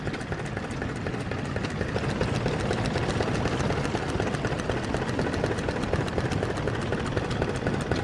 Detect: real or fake real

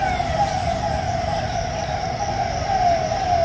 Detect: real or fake real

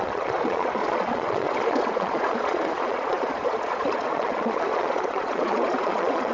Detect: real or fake fake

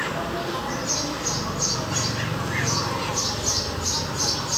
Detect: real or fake real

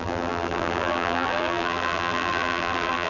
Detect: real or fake fake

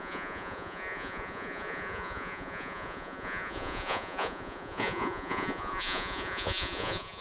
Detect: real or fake fake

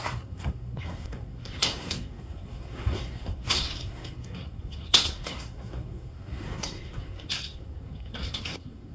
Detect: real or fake fake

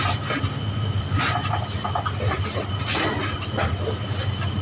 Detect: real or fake real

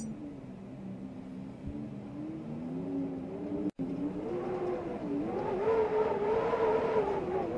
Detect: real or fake real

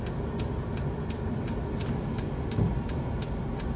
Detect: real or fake real